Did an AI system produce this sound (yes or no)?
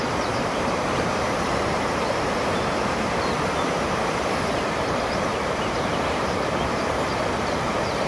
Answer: yes